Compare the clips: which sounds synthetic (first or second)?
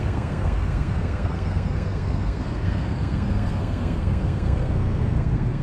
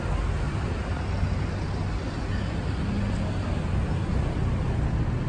first